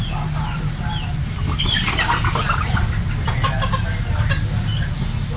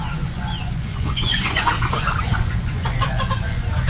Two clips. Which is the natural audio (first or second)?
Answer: first